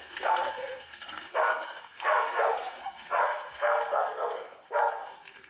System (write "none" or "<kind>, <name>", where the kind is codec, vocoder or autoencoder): codec, SNAC